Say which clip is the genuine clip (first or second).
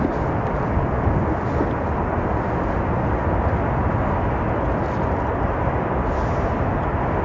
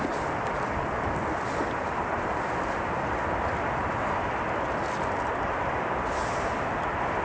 first